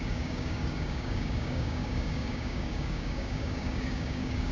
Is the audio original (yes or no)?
no